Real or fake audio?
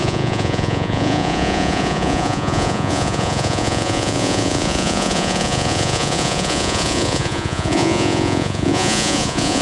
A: fake